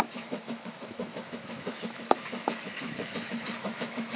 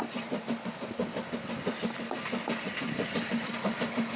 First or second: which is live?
second